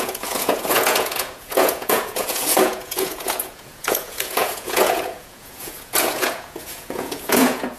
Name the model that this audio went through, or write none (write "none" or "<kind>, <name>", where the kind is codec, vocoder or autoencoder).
vocoder, Vocos